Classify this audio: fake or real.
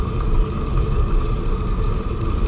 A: fake